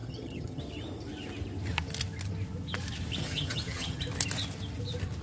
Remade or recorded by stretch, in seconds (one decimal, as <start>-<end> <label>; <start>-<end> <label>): 0.0-0.6 remade; 0.6-3.2 recorded; 3.2-4.0 remade; 4.0-5.2 recorded